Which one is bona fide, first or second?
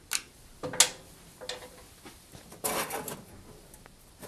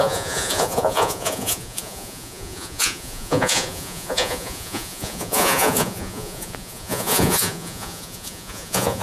first